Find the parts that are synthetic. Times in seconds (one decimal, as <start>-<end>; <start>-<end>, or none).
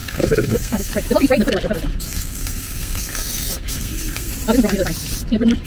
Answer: 0.0-0.9; 1.9-4.3